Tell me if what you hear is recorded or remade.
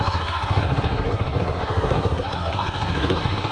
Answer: remade